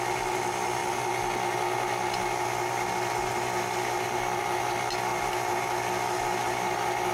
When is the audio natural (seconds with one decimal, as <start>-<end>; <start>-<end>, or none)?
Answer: 0.0-7.1